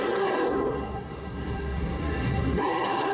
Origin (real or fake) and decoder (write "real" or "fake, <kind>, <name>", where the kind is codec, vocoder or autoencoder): fake, codec, SNAC